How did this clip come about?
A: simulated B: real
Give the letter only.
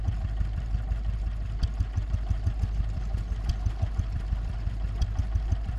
B